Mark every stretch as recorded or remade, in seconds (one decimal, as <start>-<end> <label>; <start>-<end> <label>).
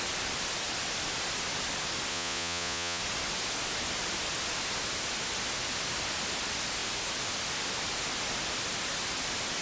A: 0.0-2.1 recorded; 2.1-3.0 remade; 3.0-9.6 recorded